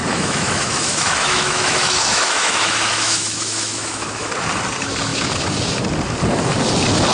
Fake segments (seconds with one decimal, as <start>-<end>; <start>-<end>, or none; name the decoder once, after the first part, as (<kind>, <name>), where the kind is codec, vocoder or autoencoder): 0.0-4.3 (autoencoder, DAC-VAE)